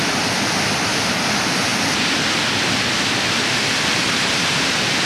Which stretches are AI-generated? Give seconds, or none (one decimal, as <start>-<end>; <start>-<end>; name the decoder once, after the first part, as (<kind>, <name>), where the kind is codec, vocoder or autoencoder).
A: none